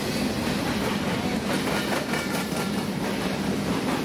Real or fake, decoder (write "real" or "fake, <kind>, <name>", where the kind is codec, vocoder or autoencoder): real